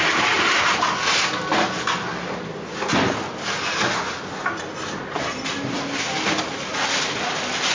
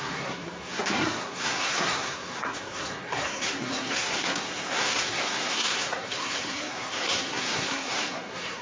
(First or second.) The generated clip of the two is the second